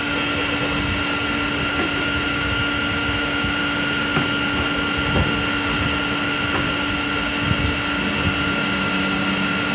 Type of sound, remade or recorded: recorded